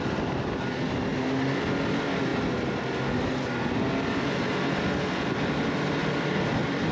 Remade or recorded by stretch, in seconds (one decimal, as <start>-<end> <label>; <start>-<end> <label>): 0.0-6.0 recorded; 6.0-6.9 remade